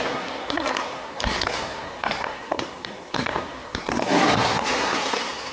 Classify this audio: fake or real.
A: fake